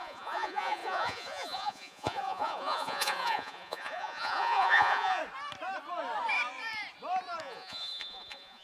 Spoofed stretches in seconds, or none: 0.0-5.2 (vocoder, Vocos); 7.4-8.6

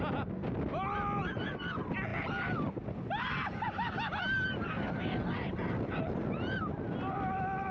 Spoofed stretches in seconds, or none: none